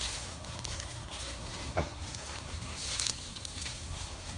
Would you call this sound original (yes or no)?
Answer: no